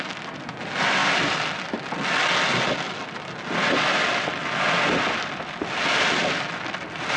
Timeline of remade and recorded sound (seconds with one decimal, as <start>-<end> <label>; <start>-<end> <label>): 0.0-7.2 recorded